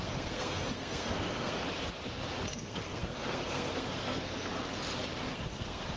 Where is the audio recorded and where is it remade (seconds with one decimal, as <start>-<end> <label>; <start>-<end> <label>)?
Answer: 0.0-1.6 remade; 1.6-2.5 recorded; 2.5-4.5 remade; 4.5-5.3 recorded; 5.3-6.0 remade